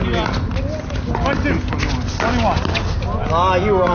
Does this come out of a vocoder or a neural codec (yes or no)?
no